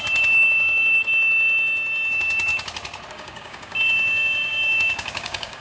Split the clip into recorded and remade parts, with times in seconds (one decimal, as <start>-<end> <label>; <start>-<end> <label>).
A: 0.0-1.0 remade; 1.0-2.1 recorded; 2.1-2.5 remade; 2.5-3.1 recorded; 3.1-5.6 remade